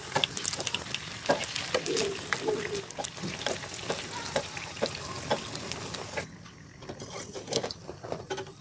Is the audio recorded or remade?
recorded